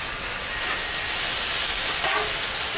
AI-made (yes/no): no